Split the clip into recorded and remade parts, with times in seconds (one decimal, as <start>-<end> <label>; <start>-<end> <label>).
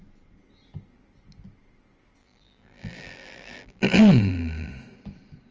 0.0-2.2 recorded; 2.2-4.7 remade; 4.7-5.5 recorded